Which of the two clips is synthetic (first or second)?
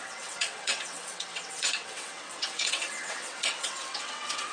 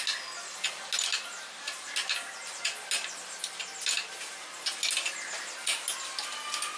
first